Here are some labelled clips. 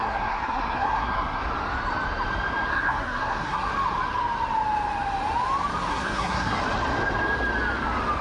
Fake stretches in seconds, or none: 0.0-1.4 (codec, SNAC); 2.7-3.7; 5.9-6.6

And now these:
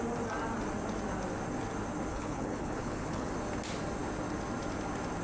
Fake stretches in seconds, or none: 2.1-3.3 (codec, HILCodec)

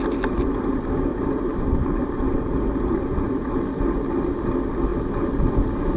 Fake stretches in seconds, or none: 1.1-3.6 (vocoder, BigVGAN v2)

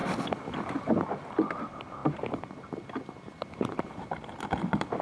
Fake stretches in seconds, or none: none

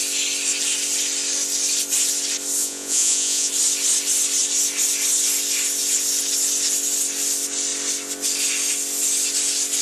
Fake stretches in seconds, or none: 2.6-3.5 (vocoder, Vocos)

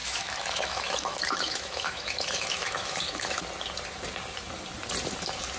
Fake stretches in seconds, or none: 0.0-3.4 (autoencoder, DAC-VAE)

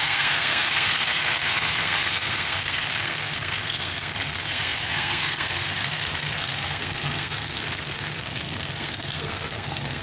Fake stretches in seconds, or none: 0.0-10.0 (codec, SNAC)